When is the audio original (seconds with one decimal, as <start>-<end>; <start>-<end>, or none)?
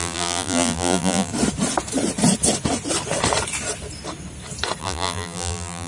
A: 1.3-4.8